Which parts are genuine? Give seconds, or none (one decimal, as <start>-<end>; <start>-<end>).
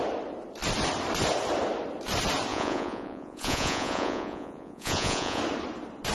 0.0-2.5; 5.4-6.1